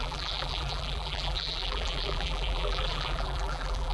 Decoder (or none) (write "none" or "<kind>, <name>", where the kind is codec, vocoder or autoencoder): vocoder, BigVGAN v2